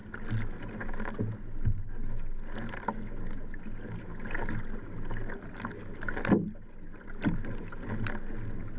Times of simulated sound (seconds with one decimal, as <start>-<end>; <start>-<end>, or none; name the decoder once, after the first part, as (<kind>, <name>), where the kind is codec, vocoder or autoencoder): none